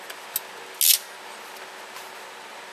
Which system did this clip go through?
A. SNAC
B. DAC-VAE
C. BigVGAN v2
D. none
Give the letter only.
D